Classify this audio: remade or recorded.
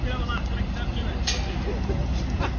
recorded